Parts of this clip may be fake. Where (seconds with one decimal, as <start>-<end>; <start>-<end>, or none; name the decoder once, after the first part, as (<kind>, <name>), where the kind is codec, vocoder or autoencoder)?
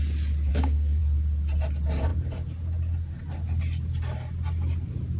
0.5-1.0 (codec, SNAC)